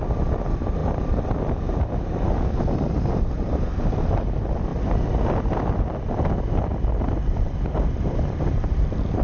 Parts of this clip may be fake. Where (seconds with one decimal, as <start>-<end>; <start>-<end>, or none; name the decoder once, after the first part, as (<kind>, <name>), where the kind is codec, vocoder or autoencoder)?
none